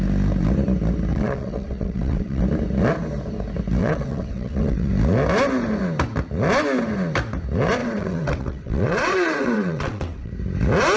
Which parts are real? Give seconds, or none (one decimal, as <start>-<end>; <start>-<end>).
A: 0.0-1.1; 2.4-3.8; 4.9-7.8; 10.3-11.0